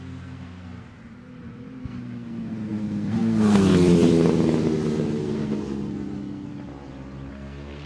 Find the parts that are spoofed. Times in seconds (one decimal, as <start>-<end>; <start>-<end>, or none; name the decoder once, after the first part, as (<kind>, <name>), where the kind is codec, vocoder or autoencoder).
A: 0.0-1.0 (codec, SNAC); 1.8-3.7; 5.2-6.5; 7.3-7.9